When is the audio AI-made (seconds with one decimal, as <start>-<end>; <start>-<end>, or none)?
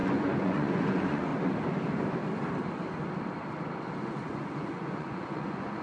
0.0-1.3; 4.0-5.8